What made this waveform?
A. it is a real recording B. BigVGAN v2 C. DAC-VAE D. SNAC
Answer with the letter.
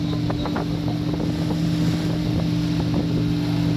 A